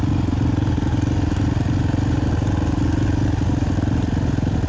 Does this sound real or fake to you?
real